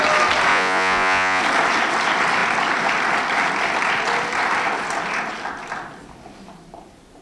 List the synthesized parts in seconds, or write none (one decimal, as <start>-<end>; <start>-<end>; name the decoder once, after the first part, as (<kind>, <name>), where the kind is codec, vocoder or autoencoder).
0.5-1.4 (vocoder, Vocos)